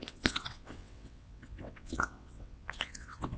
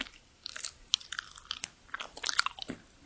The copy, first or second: first